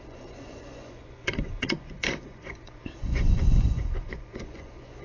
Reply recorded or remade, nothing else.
remade